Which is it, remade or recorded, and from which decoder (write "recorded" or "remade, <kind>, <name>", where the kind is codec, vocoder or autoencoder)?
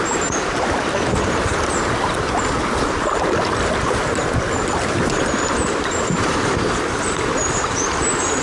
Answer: recorded